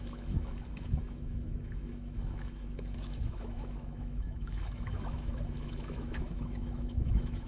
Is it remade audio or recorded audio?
remade